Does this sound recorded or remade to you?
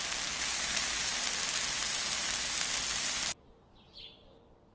recorded